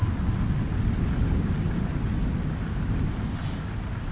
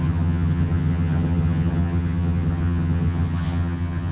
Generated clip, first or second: second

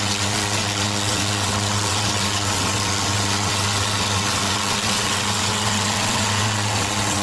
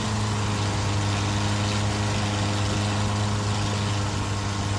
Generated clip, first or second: first